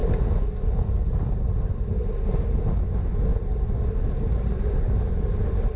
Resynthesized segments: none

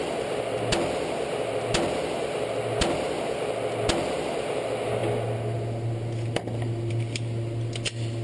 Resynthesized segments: none